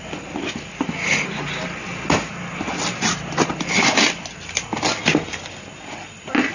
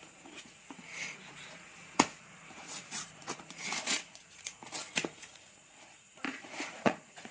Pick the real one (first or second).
first